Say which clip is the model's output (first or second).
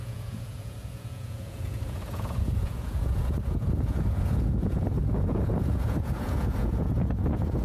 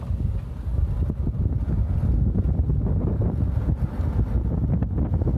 first